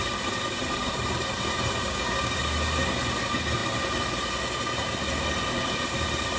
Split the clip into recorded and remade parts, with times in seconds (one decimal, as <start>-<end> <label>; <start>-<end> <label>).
0.0-1.8 recorded; 1.8-2.4 remade; 2.4-6.4 recorded